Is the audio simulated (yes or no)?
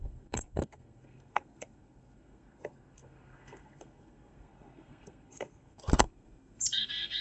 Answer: yes